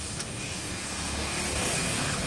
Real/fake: fake